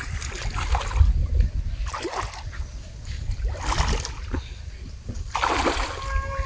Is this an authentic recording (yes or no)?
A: yes